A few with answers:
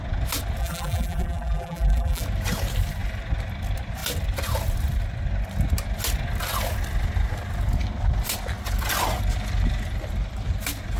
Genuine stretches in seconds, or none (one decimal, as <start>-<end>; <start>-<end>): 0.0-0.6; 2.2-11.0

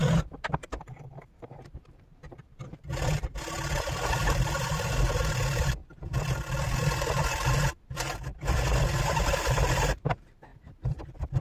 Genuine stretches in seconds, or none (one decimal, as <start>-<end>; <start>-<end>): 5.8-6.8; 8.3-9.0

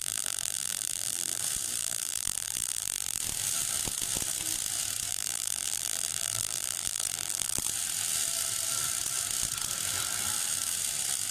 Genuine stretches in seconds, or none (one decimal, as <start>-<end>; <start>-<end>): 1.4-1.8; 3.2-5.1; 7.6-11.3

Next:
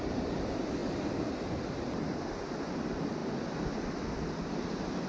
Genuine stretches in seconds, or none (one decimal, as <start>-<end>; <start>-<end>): 0.0-5.1

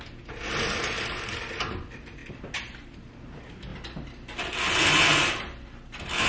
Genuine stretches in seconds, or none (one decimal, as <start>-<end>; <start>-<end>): 0.0-6.3